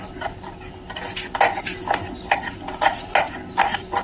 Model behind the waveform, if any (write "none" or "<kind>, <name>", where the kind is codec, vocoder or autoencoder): none